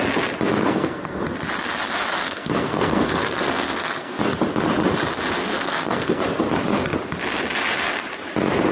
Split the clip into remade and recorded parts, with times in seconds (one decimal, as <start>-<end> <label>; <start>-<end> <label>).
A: 0.0-0.6 recorded; 0.6-1.2 remade; 1.2-2.2 recorded; 2.2-4.2 remade; 4.2-5.4 recorded; 5.4-6.2 remade; 6.2-8.7 recorded